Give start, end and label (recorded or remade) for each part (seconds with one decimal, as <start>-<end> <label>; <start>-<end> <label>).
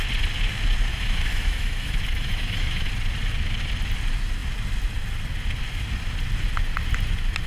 0.0-0.9 recorded; 0.9-2.9 remade; 2.9-7.5 recorded